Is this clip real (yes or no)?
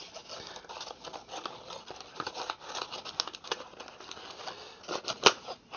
yes